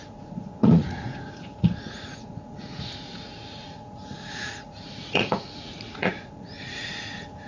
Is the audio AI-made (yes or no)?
yes